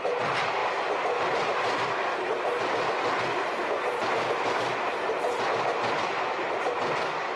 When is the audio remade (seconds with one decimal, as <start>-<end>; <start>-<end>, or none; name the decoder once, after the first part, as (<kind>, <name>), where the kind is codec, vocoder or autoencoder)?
none